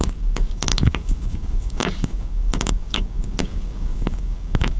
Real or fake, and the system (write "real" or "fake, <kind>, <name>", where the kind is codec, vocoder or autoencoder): fake, codec, DAC